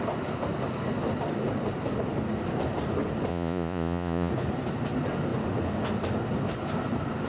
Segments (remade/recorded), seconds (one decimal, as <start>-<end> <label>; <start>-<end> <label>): 0.0-3.3 recorded; 3.3-4.3 remade; 4.3-7.3 recorded